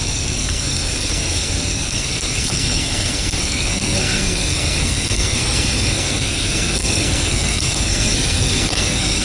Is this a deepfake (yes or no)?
yes